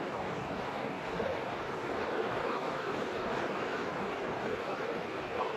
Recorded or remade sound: remade